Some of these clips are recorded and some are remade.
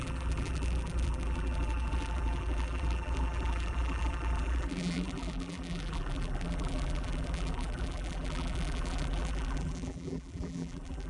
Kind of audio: remade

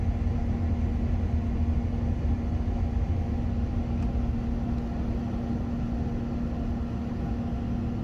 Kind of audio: recorded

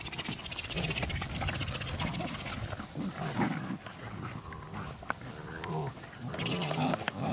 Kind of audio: recorded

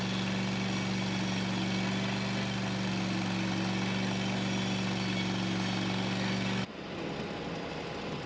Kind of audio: recorded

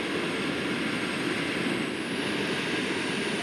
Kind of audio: recorded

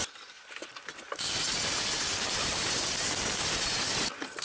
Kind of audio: recorded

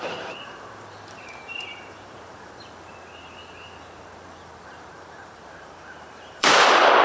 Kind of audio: remade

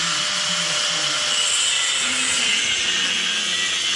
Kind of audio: recorded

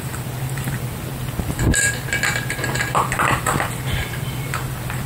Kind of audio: recorded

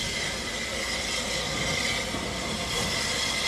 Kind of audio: remade